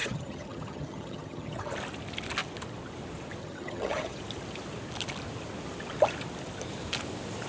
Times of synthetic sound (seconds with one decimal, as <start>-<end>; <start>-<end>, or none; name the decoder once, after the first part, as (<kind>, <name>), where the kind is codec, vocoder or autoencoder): 0.0-1.7 (vocoder, HiFi-GAN); 3.4-4.2